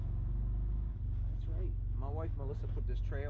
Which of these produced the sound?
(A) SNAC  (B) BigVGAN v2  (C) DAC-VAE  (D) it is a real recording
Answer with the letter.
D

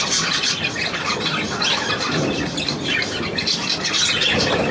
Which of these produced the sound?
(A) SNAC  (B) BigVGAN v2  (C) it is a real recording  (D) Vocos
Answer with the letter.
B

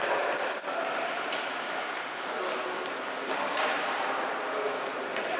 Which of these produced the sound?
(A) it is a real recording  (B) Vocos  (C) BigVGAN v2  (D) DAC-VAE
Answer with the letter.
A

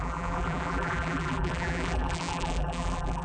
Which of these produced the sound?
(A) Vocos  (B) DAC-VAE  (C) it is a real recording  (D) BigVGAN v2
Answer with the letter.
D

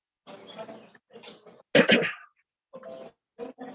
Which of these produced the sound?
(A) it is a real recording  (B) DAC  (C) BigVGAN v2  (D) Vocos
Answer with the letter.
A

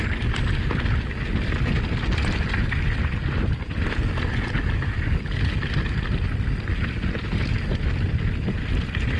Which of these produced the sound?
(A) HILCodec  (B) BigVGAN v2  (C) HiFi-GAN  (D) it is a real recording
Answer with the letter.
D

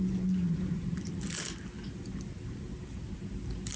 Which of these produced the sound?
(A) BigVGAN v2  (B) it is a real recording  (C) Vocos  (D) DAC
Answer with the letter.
B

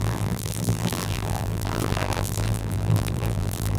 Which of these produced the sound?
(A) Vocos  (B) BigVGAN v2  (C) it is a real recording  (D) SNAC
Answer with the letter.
B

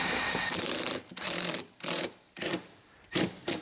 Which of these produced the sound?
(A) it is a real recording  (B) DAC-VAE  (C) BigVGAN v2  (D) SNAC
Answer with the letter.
C